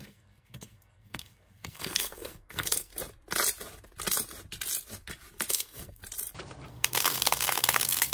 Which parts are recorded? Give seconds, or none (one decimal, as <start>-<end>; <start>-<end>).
2.9-5.5; 6.0-6.7